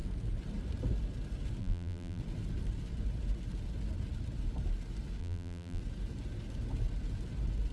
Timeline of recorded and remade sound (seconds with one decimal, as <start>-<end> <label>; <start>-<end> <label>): 0.0-1.6 recorded; 1.6-2.2 remade; 2.2-5.2 recorded; 5.2-5.8 remade; 5.8-7.7 recorded